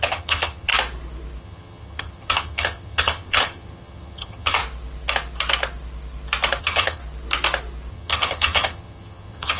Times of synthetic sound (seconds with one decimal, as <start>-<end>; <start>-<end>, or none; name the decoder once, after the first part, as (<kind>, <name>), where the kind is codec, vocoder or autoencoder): 0.0-0.7 (vocoder, HiFi-GAN); 1.4-4.6; 6.6-7.0; 7.9-9.6